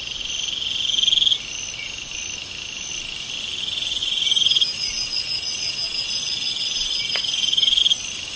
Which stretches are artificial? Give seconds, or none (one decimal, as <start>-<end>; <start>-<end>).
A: 4.0-7.8